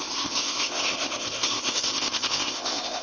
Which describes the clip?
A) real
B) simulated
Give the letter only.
B